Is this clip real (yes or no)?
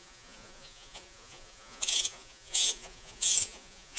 no